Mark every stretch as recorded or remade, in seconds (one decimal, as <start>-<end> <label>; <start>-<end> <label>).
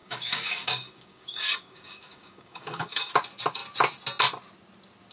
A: 0.0-3.1 remade; 3.1-5.1 recorded